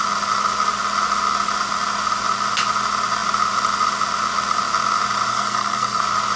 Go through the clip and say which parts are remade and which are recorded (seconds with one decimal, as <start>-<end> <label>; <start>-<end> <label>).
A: 0.0-5.3 recorded; 5.3-6.0 remade; 6.0-6.4 recorded